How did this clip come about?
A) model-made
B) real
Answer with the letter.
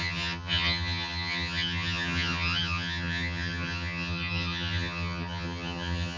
A